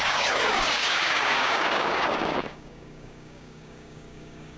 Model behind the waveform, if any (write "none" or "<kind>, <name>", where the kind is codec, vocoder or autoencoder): codec, DAC